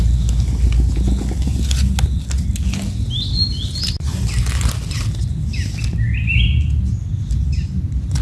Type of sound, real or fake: real